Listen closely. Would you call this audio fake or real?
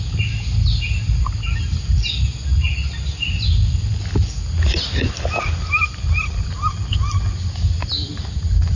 real